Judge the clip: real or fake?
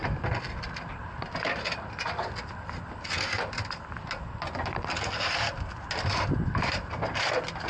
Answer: real